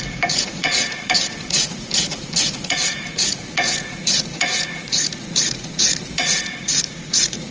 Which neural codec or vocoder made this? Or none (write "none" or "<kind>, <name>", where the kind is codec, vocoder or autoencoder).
vocoder, Vocos